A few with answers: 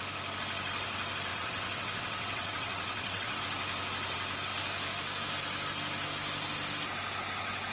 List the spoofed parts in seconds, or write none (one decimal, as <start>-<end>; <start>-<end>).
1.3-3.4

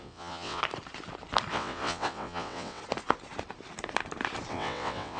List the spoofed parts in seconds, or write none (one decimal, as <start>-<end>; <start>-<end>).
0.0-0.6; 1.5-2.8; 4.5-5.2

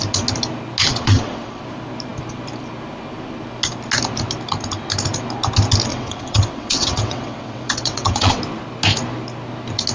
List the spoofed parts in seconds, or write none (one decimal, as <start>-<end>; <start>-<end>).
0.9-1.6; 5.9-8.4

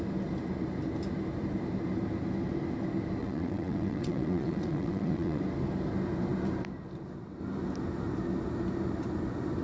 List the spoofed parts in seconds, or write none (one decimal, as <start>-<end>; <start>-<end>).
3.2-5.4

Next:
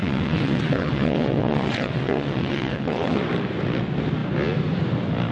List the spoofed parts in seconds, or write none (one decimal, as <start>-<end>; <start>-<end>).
0.0-3.2